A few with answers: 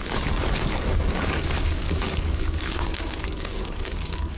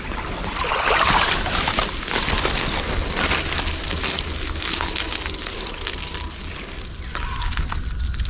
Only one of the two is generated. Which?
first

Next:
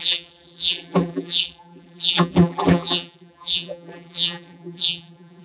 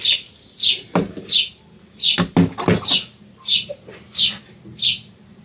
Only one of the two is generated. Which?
first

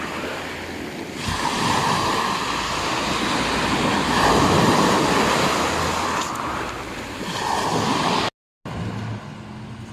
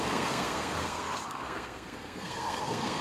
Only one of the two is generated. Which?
second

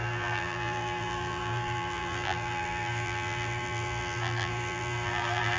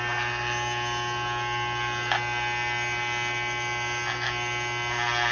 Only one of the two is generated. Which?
first